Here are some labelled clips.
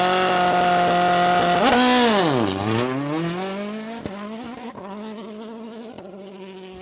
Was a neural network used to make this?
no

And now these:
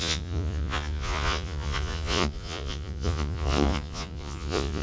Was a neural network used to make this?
yes